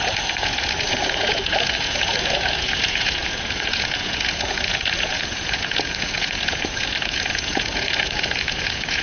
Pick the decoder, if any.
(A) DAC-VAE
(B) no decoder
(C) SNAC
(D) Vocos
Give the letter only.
D